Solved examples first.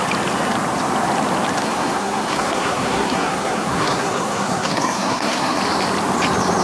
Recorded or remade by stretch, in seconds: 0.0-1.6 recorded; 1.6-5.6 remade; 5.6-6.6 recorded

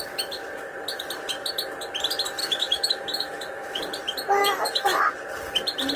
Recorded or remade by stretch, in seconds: 0.0-2.4 recorded; 2.4-3.8 remade; 3.8-4.4 recorded; 4.4-5.0 remade; 5.0-6.0 recorded

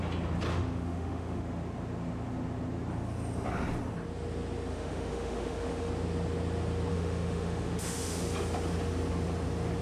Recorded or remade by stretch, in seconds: 0.0-0.5 recorded; 0.5-1.4 remade; 1.4-4.7 recorded; 4.7-5.9 remade; 5.9-6.9 recorded; 6.9-8.2 remade; 8.2-9.8 recorded

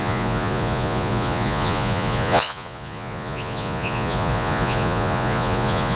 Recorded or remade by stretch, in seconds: 0.0-6.0 remade

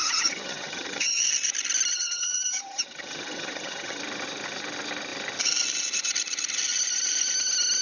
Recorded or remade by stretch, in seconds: 0.0-1.2 remade; 1.2-1.9 recorded; 1.9-4.0 remade; 4.0-7.8 recorded

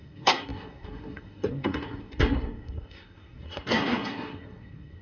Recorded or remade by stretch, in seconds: 0.0-5.0 remade

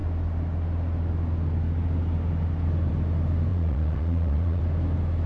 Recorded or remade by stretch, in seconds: 0.0-3.5 recorded; 3.5-4.6 remade; 4.6-5.3 recorded

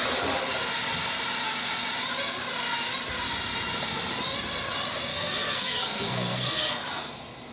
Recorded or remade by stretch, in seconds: 0.0-5.1 recorded; 5.1-6.8 remade; 6.8-7.5 recorded